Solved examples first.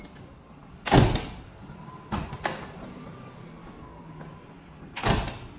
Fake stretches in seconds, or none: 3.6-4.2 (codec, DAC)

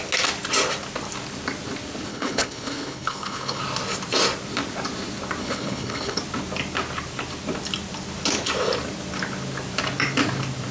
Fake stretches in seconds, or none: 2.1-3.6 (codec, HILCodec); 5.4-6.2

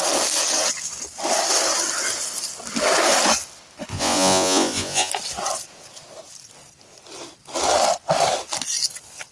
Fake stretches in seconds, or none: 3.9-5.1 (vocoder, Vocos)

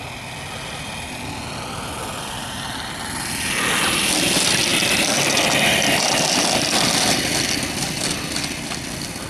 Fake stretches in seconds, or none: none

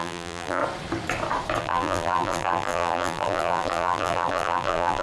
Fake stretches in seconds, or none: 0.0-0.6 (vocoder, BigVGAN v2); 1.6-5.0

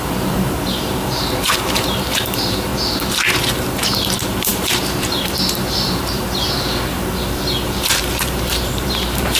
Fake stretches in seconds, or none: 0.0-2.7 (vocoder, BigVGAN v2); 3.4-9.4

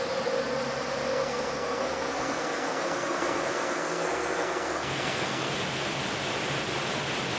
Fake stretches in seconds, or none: 1.1-5.5 (codec, SNAC)